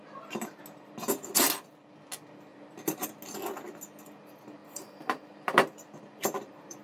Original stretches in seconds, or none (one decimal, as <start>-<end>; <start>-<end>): 0.0-2.5; 3.1-4.6